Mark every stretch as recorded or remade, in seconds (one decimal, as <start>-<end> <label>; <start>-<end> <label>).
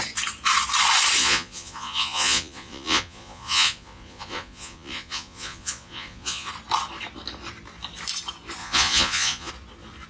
0.0-1.2 recorded; 1.2-6.5 remade; 6.5-8.6 recorded; 8.6-9.5 remade; 9.5-10.1 recorded